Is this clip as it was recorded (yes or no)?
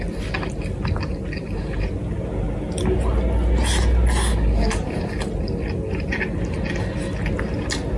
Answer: yes